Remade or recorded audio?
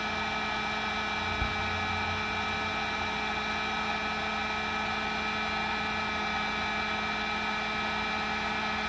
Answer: recorded